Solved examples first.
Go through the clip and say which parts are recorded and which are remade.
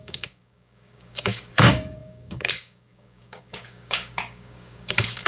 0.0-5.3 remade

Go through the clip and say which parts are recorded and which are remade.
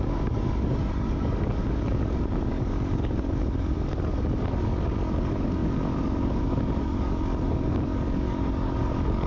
0.0-9.3 remade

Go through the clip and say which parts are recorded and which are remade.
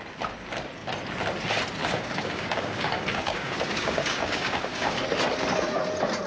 0.0-1.8 recorded; 1.8-5.0 remade; 5.0-6.3 recorded